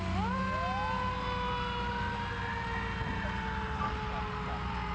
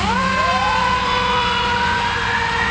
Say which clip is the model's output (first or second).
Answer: second